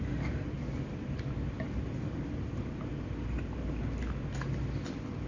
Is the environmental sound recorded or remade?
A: recorded